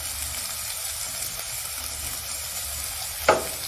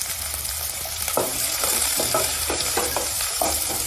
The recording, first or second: first